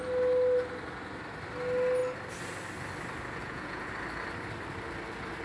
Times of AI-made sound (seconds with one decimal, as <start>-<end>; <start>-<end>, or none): 3.4-3.9